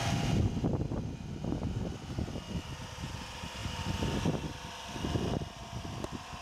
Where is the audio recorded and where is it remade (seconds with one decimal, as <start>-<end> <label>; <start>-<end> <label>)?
0.0-3.6 recorded; 3.6-4.5 remade; 4.5-6.4 recorded